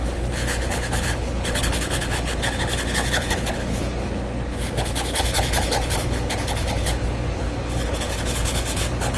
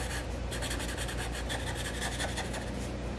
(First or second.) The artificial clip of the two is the first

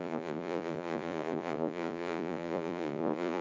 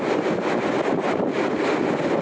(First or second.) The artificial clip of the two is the first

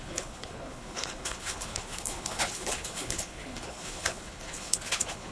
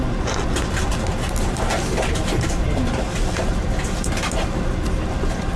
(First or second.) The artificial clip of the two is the first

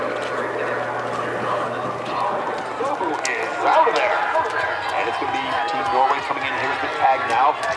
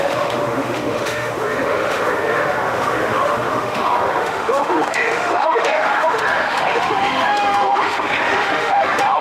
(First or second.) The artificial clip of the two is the second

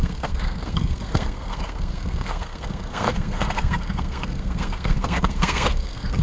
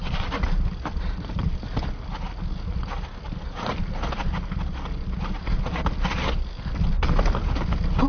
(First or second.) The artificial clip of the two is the first